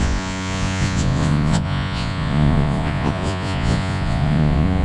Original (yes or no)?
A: no